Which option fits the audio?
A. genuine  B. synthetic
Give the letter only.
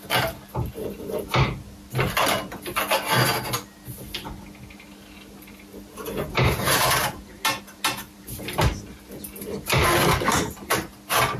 A